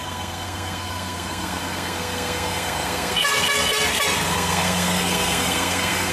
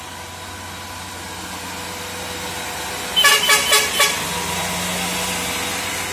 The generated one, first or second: first